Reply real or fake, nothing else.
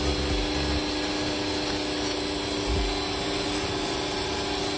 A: real